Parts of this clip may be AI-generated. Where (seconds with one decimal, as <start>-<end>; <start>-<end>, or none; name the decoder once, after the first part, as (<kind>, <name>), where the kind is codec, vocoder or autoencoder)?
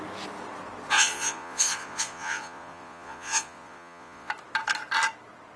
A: 0.9-4.3 (vocoder, Vocos)